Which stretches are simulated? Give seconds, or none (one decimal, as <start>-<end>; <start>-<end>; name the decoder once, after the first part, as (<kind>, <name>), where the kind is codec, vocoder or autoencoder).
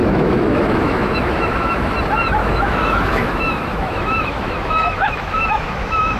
0.0-1.9 (autoencoder, DAC-VAE); 2.4-6.2